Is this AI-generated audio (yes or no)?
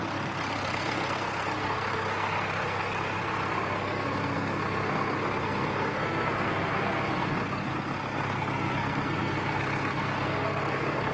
yes